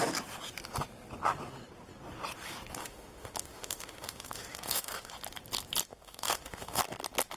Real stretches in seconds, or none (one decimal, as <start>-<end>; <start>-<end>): 0.0-2.8; 5.1-5.9; 6.8-7.4